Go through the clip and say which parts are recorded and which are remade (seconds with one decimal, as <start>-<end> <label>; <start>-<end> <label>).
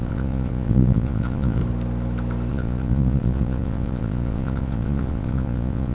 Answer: 0.0-1.6 remade; 1.6-2.5 recorded; 2.5-5.9 remade